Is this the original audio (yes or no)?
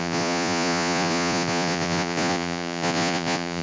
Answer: no